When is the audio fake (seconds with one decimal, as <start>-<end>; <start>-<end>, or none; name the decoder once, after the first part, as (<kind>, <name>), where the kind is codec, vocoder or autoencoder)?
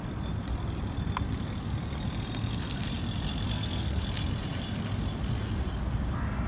3.5-4.0 (codec, SNAC)